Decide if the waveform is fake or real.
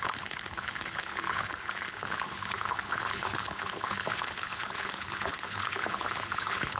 fake